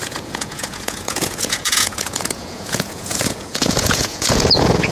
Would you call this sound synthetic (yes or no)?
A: yes